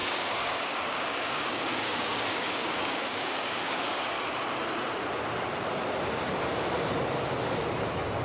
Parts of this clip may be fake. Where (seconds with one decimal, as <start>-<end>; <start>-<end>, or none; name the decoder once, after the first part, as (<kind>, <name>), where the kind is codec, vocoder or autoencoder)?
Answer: 0.0-3.9 (codec, DAC)